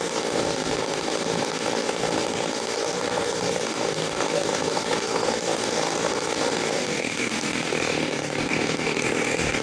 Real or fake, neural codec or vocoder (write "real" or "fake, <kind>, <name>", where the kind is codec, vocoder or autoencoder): fake, codec, DAC